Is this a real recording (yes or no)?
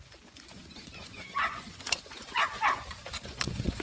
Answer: no